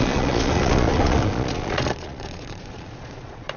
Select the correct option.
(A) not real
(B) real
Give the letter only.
A